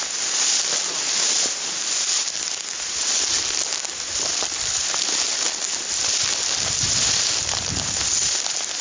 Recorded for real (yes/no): yes